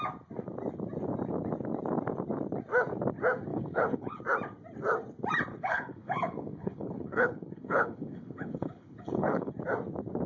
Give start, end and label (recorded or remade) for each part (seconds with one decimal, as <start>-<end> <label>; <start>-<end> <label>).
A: 0.0-3.5 recorded; 3.5-4.2 remade; 4.2-5.5 recorded; 5.5-9.5 remade; 9.5-10.3 recorded